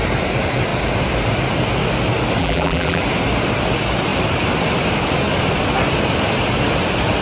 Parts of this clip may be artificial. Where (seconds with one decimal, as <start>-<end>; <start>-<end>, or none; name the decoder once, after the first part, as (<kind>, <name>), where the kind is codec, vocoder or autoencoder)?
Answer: 2.4-3.0 (vocoder, BigVGAN v2)